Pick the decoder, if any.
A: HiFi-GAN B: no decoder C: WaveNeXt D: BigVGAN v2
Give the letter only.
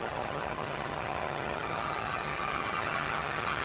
A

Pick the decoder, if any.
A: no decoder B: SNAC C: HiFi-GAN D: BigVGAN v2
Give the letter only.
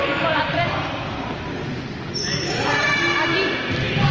A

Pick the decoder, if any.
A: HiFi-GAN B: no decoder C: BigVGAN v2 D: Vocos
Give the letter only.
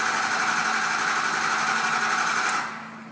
B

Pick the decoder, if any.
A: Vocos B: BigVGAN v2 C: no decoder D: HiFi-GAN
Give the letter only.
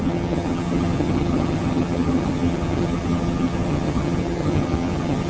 D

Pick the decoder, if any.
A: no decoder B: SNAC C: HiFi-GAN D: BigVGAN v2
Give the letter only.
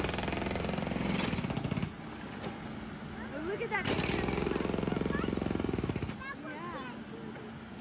A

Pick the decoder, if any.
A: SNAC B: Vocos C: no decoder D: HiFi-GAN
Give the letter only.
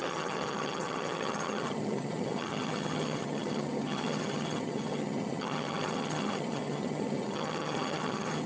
D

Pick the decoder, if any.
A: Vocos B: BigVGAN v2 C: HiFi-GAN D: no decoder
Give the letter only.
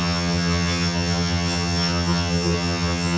C